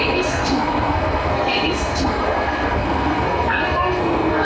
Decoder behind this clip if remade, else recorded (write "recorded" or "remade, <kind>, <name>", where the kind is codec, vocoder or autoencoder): remade, codec, SNAC